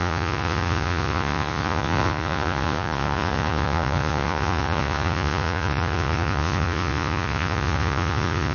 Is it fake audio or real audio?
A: fake